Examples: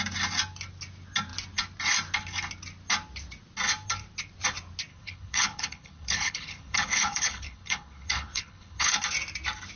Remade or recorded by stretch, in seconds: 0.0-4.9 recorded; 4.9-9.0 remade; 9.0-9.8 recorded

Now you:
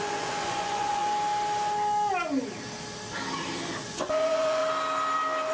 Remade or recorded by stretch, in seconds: 0.0-1.0 remade; 1.0-3.8 recorded; 3.8-4.6 remade; 4.6-5.5 recorded

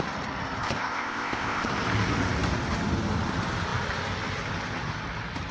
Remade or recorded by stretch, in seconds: 0.0-0.6 recorded; 0.6-1.7 remade; 1.7-5.5 recorded

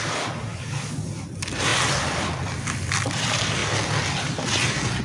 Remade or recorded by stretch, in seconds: 0.0-0.5 recorded; 0.5-1.1 remade; 1.1-5.0 recorded

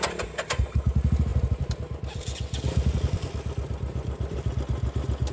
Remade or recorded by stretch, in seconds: 0.0-1.3 recorded; 1.3-4.5 remade; 4.5-5.3 recorded